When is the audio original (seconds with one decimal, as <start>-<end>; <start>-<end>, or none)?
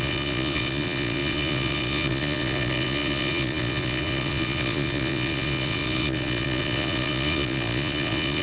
none